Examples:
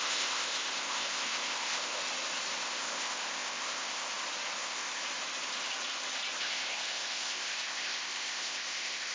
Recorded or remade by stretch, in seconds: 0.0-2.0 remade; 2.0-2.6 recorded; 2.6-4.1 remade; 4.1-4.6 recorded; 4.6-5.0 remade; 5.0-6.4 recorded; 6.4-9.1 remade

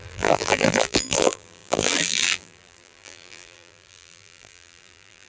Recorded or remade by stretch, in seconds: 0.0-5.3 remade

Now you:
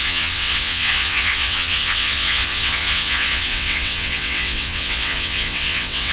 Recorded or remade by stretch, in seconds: 0.0-6.1 remade